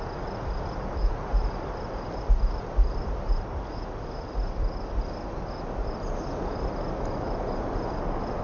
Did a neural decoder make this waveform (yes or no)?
no